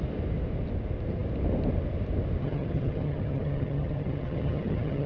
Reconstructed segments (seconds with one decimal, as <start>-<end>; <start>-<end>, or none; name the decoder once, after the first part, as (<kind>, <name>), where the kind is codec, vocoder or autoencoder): 2.4-5.1 (vocoder, HiFi-GAN)